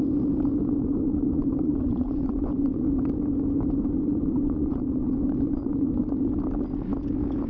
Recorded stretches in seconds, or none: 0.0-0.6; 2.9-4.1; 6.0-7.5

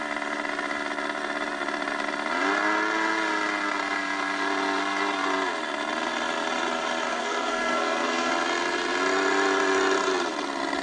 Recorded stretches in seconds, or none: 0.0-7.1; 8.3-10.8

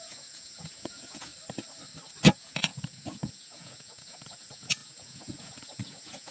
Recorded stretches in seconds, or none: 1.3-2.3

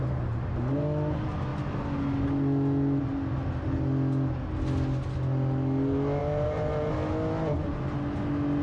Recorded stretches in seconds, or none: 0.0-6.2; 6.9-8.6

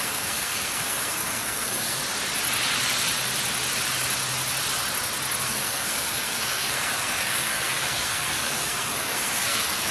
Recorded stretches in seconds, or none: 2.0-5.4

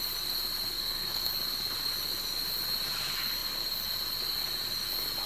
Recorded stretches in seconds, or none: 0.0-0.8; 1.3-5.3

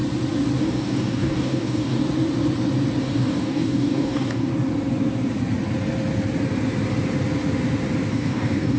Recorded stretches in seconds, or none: 0.0-0.6; 2.0-3.0; 4.5-8.1